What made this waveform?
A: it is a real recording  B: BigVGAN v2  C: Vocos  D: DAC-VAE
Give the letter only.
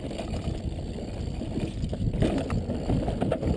A